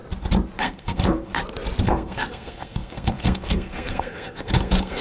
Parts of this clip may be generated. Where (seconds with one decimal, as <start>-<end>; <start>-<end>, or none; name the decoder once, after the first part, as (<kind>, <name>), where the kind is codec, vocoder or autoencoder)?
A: 0.6-1.3 (codec, SNAC); 1.8-5.0